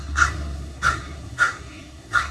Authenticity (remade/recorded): remade